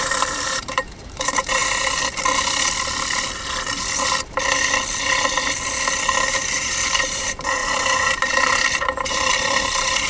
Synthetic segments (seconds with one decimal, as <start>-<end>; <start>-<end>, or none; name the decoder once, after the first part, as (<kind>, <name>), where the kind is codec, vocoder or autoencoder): 0.0-1.6 (vocoder, BigVGAN v2); 6.3-10.1